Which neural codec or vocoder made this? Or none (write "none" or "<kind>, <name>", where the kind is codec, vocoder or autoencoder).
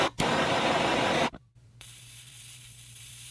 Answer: vocoder, BigVGAN v2